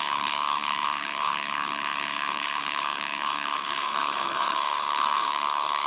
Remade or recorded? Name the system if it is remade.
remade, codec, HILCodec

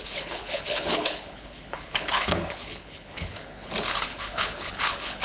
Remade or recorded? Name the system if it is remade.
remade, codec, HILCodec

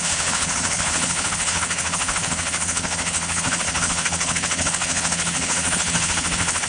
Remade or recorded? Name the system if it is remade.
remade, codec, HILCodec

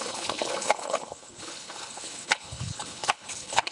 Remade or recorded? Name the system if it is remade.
remade, codec, HILCodec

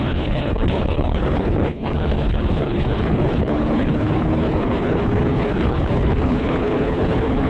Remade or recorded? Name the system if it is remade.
remade, codec, HILCodec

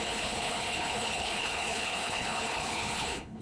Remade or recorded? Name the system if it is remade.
remade, codec, HILCodec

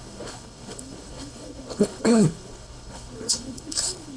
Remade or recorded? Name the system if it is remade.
remade, codec, HILCodec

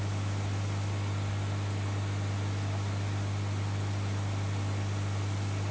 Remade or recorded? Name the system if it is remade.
recorded